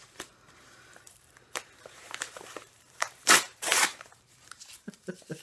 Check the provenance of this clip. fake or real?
fake